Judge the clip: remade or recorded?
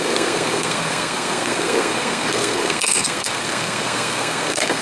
remade